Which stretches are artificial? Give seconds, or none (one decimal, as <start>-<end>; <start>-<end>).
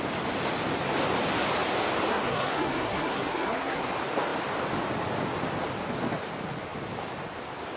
2.1-3.9